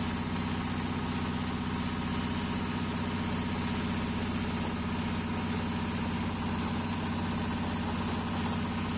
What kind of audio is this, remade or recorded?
recorded